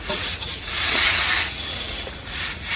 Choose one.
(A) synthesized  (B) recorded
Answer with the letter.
A